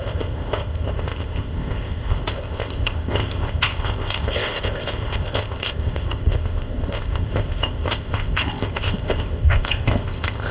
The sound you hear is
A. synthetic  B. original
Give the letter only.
A